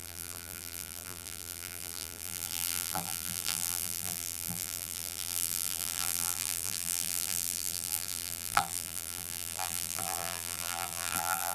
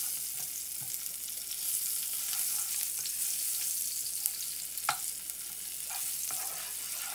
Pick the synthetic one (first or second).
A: first